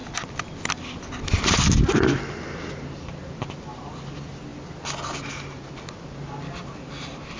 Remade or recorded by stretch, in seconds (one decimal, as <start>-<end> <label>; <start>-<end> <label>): 0.0-7.4 recorded